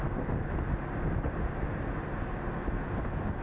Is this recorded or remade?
recorded